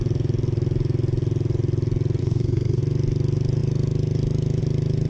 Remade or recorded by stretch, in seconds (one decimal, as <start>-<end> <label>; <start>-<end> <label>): 0.0-2.2 recorded; 2.2-2.8 remade; 2.8-5.1 recorded

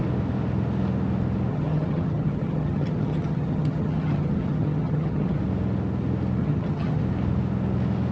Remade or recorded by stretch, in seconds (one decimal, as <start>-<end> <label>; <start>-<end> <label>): 0.0-1.5 recorded; 1.5-5.4 remade; 5.4-6.4 recorded; 6.4-7.0 remade; 7.0-8.1 recorded

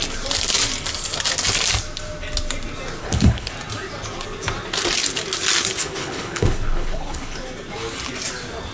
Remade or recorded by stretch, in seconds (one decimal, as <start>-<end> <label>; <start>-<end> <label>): 0.0-3.0 recorded; 3.0-3.5 remade; 3.5-5.8 recorded; 5.8-7.4 remade; 7.4-8.7 recorded